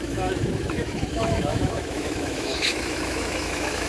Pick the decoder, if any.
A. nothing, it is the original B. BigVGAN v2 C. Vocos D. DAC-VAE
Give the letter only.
D